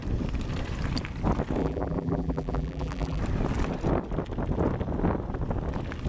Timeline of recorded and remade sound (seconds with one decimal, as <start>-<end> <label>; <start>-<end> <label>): 0.0-1.6 recorded; 1.6-3.2 remade; 3.2-6.1 recorded